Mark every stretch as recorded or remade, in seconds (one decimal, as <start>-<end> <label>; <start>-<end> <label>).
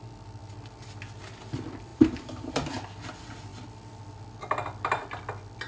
0.0-1.9 recorded; 1.9-2.7 remade; 2.7-5.7 recorded